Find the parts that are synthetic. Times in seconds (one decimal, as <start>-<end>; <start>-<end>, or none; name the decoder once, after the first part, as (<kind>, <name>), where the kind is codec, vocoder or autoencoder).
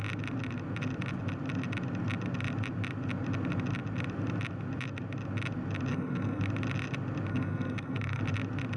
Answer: 5.9-6.4 (codec, SNAC); 7.3-8.2